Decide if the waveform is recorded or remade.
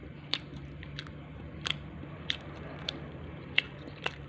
remade